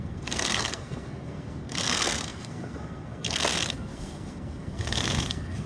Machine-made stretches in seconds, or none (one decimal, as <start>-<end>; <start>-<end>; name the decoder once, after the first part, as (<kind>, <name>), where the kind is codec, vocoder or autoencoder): 0.0-5.7 (codec, SNAC)